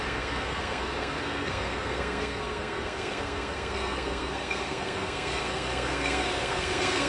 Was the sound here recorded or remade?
remade